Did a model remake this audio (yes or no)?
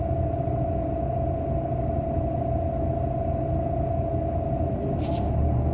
no